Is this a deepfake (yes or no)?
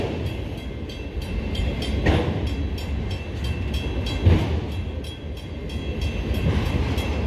no